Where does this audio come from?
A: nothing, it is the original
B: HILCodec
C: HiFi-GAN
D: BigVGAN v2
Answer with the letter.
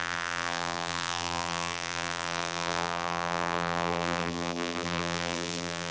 D